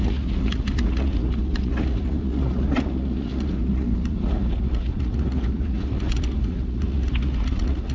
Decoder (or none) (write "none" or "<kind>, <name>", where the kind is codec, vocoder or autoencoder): vocoder, Vocos